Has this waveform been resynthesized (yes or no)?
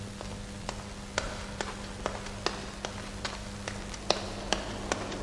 no